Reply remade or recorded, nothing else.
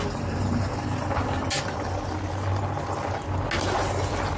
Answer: recorded